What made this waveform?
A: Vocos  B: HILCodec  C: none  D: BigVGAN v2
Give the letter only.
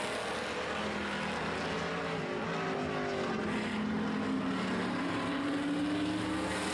C